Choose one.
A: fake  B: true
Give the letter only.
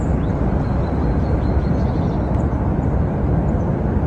B